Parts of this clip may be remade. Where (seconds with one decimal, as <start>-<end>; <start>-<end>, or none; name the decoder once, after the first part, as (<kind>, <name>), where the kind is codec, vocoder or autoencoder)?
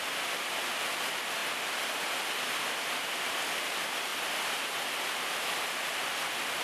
none